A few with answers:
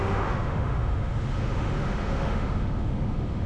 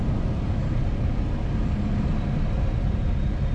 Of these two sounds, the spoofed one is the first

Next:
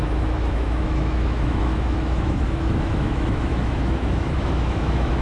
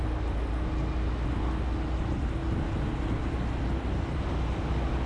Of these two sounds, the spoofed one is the first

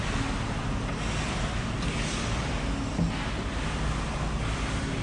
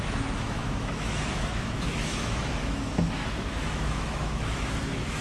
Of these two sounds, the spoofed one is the second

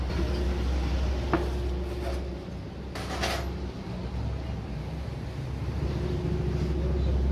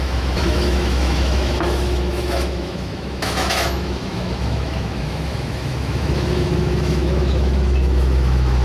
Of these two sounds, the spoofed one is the second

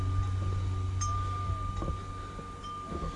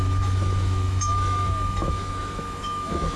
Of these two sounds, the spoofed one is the second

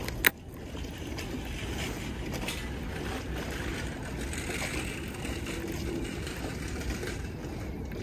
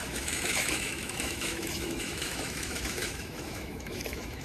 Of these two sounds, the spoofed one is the second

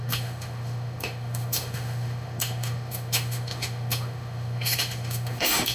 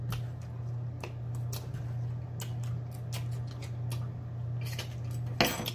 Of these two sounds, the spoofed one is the first